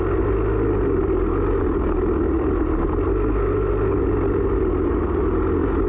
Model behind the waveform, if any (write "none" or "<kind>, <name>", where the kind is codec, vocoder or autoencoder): none